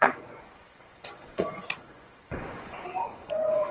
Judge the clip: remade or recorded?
remade